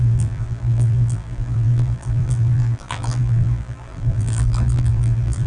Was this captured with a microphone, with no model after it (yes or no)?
no